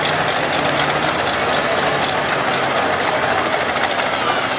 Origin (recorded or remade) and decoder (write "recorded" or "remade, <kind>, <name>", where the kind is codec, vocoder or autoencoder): recorded